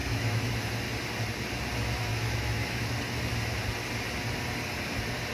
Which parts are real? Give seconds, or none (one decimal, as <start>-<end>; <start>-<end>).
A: 0.5-2.1; 2.9-5.3